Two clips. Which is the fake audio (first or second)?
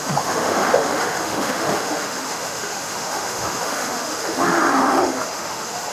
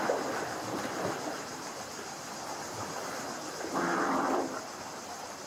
first